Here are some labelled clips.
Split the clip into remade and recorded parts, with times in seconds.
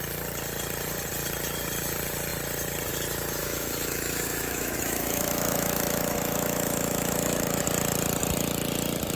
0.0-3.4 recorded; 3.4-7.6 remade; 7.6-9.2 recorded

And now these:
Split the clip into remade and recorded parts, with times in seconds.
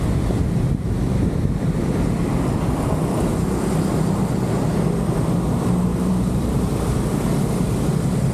0.0-5.9 recorded; 5.9-7.1 remade; 7.1-8.3 recorded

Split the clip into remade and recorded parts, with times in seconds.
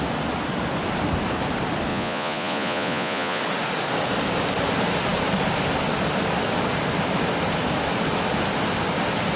0.0-1.9 recorded; 1.9-3.4 remade; 3.4-9.4 recorded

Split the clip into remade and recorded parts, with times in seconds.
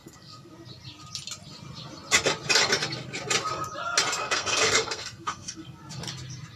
0.0-0.5 remade; 0.5-4.2 recorded; 4.2-5.8 remade; 5.8-6.6 recorded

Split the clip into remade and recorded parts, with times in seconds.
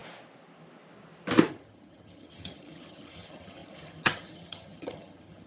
0.0-1.5 recorded; 1.5-5.5 remade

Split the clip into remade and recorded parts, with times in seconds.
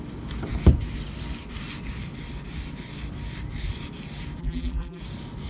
0.0-4.4 recorded; 4.4-5.0 remade; 5.0-5.5 recorded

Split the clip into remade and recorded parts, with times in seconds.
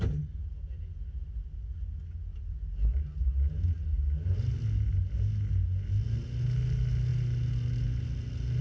0.0-8.6 recorded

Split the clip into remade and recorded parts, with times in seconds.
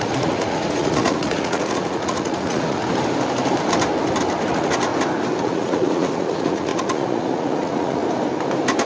0.0-2.8 remade; 2.8-4.5 recorded; 4.5-4.9 remade; 4.9-5.4 recorded; 5.4-8.0 remade; 8.0-8.9 recorded